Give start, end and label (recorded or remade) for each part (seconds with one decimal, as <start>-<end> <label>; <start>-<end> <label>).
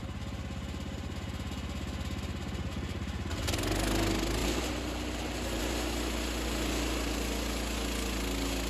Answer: 0.0-4.4 recorded; 4.4-5.6 remade; 5.6-8.7 recorded